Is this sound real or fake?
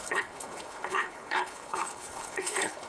fake